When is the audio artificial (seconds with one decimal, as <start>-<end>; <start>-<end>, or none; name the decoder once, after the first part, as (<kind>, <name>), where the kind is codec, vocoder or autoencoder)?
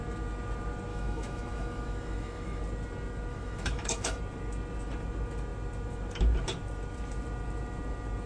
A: 0.9-2.6 (autoencoder, DAC-VAE); 3.3-4.2